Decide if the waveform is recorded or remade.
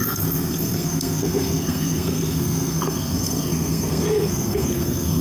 remade